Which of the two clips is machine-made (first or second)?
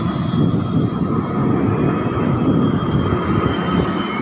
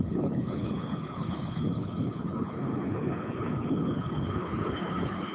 second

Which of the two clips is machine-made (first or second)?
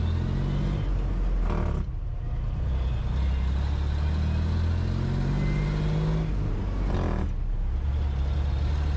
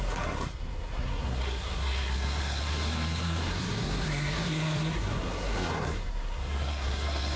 second